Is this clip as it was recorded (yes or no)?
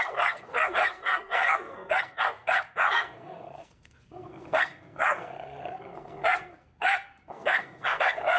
no